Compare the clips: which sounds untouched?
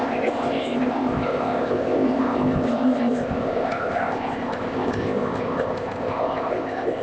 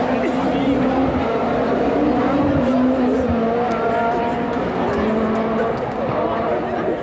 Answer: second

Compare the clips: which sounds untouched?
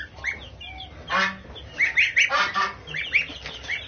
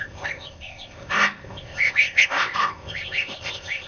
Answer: first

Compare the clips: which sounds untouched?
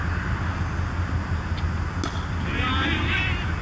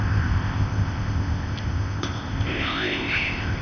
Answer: first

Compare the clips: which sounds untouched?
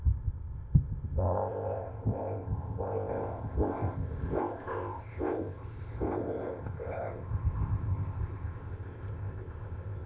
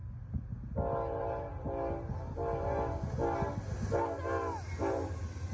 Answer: second